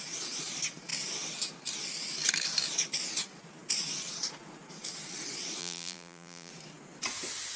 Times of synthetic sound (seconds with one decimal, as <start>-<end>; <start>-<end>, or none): 5.6-6.5